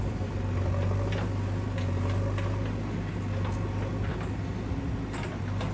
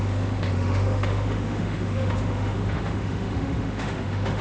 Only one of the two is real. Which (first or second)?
first